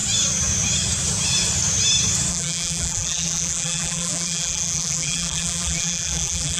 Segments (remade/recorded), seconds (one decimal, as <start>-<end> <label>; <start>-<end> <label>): 0.0-2.3 recorded; 2.3-6.6 remade